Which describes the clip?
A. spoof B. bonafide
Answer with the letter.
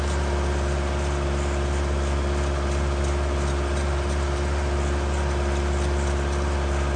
B